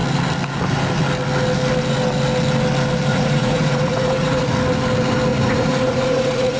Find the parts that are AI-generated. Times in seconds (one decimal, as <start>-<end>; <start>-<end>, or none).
3.1-4.5; 5.3-6.6